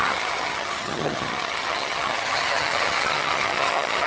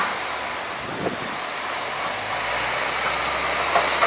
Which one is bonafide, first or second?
second